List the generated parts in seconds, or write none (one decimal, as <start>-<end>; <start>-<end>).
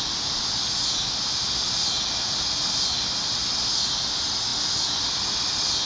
none